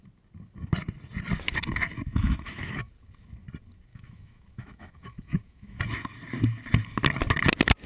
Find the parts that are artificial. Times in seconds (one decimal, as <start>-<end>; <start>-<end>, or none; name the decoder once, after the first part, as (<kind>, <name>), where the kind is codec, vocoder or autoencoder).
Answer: 2.1-2.9 (autoencoder, DAC-VAE); 3.9-5.8